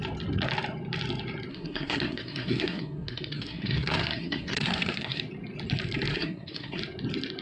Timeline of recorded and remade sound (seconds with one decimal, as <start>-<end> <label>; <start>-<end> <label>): 0.0-1.5 recorded; 1.5-5.2 remade; 5.2-6.1 recorded; 6.1-6.8 remade; 6.8-7.4 recorded